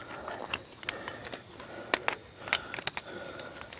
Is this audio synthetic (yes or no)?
no